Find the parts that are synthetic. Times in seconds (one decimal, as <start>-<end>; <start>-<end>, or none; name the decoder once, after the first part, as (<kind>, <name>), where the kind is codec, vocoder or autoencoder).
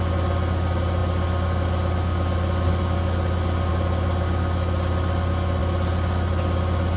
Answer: none